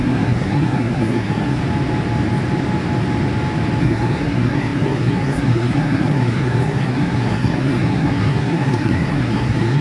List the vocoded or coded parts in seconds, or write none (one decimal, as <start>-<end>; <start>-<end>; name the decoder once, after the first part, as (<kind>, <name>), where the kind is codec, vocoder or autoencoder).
0.0-1.6 (codec, SNAC); 3.8-9.8